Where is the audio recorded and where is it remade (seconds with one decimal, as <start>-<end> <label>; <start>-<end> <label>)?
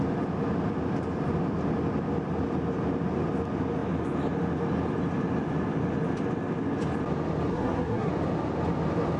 0.0-7.5 recorded; 7.5-8.1 remade; 8.1-9.2 recorded